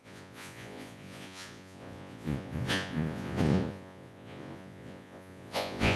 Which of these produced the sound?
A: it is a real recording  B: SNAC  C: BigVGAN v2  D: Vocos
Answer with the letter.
D